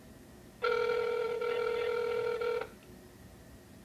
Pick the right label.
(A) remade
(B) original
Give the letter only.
B